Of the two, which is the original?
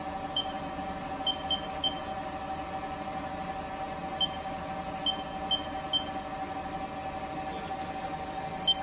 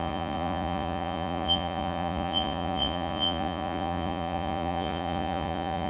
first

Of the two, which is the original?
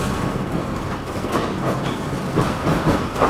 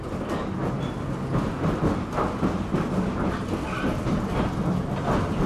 second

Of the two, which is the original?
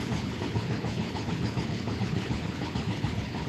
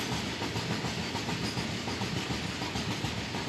second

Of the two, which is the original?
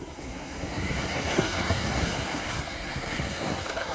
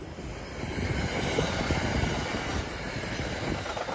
second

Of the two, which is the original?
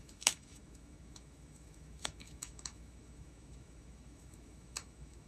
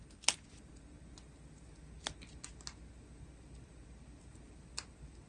second